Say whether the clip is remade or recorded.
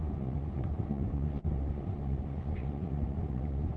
remade